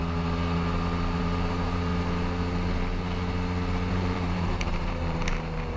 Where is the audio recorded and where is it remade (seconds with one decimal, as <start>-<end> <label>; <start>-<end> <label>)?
0.0-1.2 recorded; 1.2-1.9 remade; 1.9-3.9 recorded; 3.9-5.8 remade